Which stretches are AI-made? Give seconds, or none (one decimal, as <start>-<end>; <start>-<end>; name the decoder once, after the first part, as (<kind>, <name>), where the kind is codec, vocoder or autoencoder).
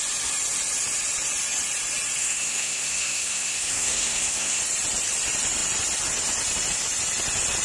2.2-4.6 (codec, SNAC)